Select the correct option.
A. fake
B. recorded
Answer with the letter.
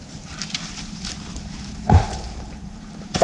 A